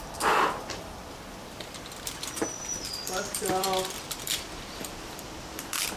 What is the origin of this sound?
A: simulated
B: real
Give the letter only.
A